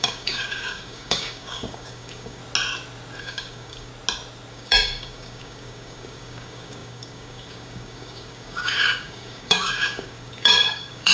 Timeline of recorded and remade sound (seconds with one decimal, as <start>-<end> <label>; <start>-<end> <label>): 0.0-2.4 remade; 2.4-3.2 recorded; 3.2-3.9 remade; 3.9-4.5 recorded; 4.5-11.1 remade